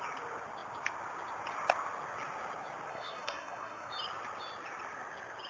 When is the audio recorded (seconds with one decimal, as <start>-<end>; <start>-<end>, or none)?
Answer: 0.0-2.9; 3.9-5.5